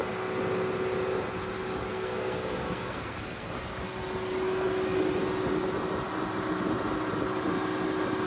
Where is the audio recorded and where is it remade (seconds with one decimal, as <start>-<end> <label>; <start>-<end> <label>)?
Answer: 0.0-1.9 recorded; 1.9-3.5 remade; 3.5-8.3 recorded